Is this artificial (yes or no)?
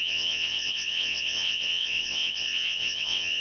yes